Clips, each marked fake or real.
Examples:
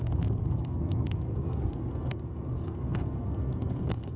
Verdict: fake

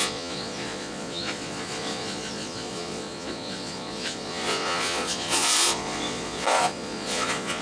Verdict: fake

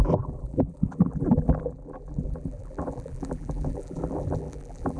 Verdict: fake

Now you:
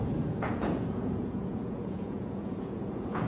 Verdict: fake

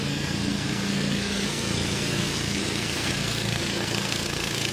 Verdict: fake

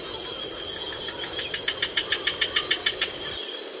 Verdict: real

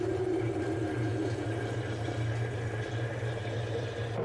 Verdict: real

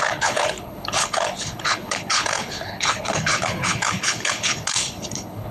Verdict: fake